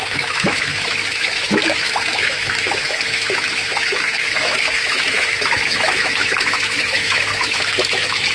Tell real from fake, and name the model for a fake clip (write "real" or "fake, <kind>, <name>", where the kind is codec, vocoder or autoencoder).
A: fake, autoencoder, DAC-VAE